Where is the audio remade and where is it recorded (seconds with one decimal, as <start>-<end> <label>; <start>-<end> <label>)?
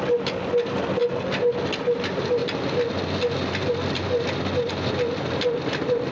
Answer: 0.0-6.1 recorded